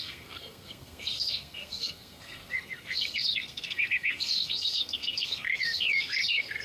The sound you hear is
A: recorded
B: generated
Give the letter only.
B